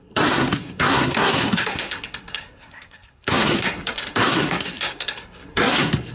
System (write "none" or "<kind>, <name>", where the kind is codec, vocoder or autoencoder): codec, SNAC